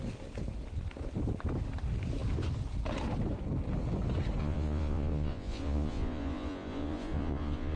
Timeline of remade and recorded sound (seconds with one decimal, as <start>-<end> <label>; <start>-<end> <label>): 0.0-4.4 recorded; 4.4-7.8 remade